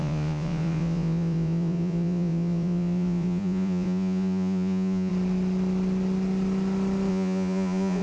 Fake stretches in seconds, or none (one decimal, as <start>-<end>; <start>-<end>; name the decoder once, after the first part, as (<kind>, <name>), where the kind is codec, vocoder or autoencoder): 0.0-5.1 (vocoder, Vocos); 7.1-8.0